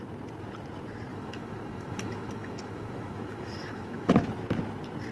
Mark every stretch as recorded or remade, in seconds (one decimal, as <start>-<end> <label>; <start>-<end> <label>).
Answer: 0.0-1.1 recorded; 1.1-4.1 remade; 4.1-5.1 recorded